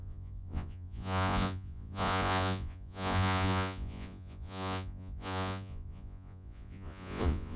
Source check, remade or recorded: remade